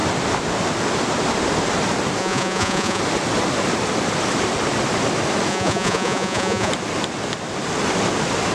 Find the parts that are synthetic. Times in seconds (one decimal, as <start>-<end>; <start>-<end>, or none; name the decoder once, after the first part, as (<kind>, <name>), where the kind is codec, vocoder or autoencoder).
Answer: 2.2-3.0 (vocoder, Vocos); 5.5-6.7